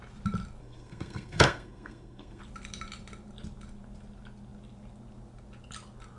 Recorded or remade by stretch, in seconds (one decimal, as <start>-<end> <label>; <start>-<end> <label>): 0.0-0.6 recorded; 0.6-2.4 remade; 2.4-6.2 recorded

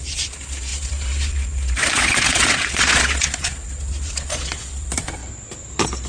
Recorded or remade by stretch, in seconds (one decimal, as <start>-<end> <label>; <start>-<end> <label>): 0.0-5.2 remade; 5.2-6.1 recorded

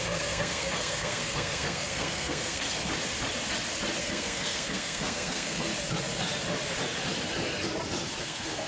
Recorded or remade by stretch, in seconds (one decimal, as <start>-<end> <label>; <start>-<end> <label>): 0.0-2.9 remade; 2.9-4.0 recorded; 4.0-5.7 remade; 5.7-8.2 recorded; 8.2-8.7 remade

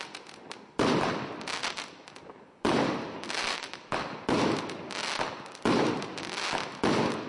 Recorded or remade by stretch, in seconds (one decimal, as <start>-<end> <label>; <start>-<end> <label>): 0.0-1.6 recorded; 1.6-4.6 remade; 4.6-7.3 recorded